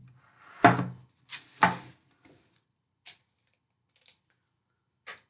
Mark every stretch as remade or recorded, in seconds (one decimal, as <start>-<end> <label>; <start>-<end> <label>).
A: 0.0-5.3 recorded